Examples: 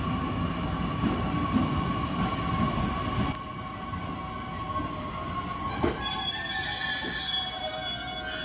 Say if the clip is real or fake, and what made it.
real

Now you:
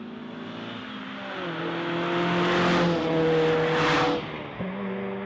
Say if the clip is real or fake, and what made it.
real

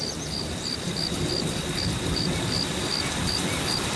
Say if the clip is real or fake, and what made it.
real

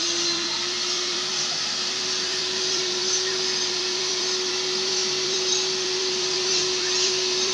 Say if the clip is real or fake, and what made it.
fake, vocoder, BigVGAN v2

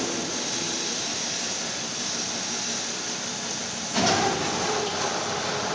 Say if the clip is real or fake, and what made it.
fake, vocoder, BigVGAN v2